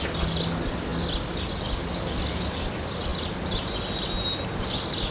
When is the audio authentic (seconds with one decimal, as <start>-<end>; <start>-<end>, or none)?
0.0-5.1